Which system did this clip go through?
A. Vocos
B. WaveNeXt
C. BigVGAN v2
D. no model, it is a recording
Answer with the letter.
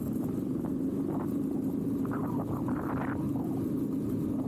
D